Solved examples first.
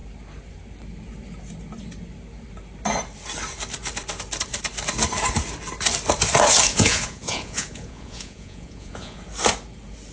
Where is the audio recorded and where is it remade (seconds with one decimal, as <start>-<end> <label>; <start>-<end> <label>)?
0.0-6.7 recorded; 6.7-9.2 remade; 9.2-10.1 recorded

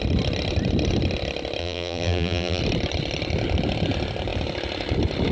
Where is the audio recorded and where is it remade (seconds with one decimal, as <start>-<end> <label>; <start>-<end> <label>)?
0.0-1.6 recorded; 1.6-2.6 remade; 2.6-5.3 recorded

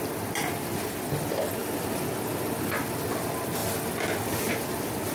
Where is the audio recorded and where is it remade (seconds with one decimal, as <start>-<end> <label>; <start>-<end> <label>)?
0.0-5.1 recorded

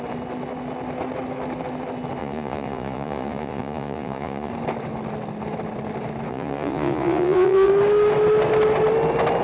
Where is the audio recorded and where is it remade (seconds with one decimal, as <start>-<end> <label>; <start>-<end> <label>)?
0.0-2.2 recorded; 2.2-4.5 remade; 4.5-6.3 recorded; 6.3-7.7 remade; 7.7-9.4 recorded

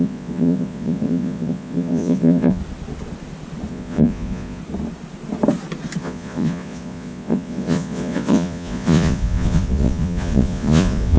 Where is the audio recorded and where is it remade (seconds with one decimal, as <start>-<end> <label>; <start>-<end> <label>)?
0.0-2.6 remade; 2.6-3.7 recorded; 3.7-4.6 remade; 4.6-6.0 recorded; 6.0-11.2 remade

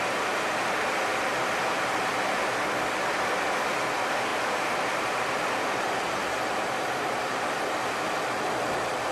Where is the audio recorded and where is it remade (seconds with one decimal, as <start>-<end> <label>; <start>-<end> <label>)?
0.0-4.3 recorded; 4.3-7.4 remade; 7.4-9.1 recorded